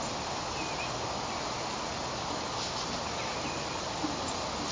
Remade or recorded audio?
recorded